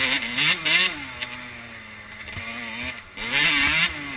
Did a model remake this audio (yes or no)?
no